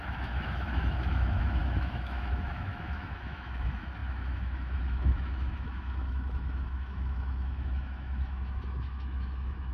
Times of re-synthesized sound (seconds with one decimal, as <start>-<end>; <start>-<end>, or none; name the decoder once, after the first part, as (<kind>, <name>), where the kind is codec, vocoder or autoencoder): 0.0-9.7 (autoencoder, DAC-VAE)